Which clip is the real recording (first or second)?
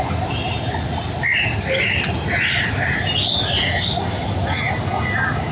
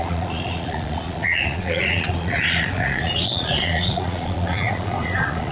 first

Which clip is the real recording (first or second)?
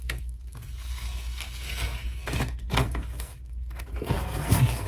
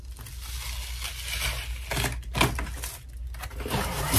second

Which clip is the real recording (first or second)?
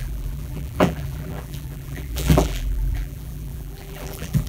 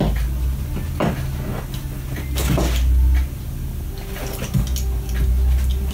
second